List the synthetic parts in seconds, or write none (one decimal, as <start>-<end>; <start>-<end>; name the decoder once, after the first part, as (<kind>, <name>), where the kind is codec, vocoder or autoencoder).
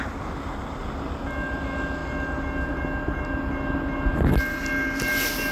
none